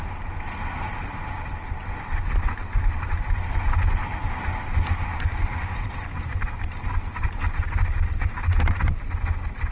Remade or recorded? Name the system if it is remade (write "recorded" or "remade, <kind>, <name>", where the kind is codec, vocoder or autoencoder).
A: recorded